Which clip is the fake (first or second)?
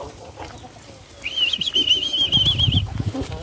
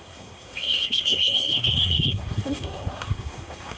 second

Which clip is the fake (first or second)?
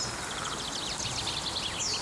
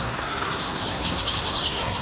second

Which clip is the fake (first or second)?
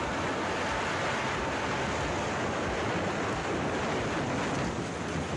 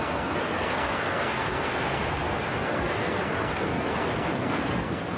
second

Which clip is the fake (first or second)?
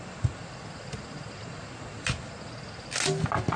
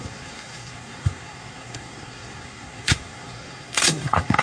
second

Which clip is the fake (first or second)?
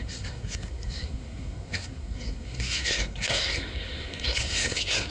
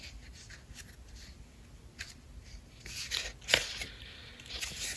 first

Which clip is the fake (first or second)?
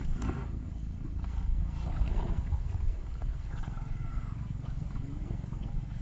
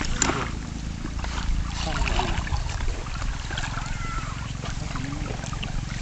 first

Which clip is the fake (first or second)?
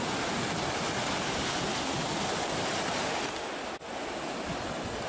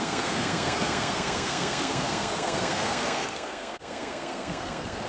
second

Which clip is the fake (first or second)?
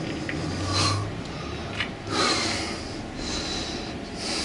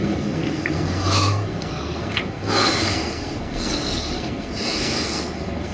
second